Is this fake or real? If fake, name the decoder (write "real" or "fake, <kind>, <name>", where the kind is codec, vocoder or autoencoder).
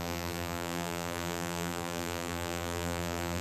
fake, vocoder, BigVGAN v2